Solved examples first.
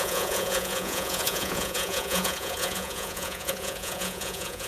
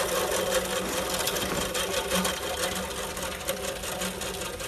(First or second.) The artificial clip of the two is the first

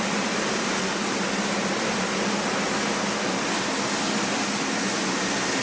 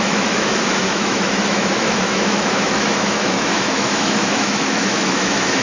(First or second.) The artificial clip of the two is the second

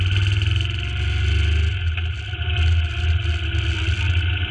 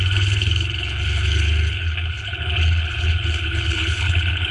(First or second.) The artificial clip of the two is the second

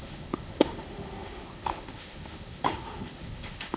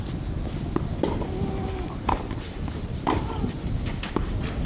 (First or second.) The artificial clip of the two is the first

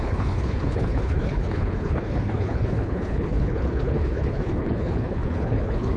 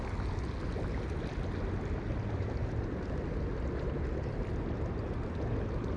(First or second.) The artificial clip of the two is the first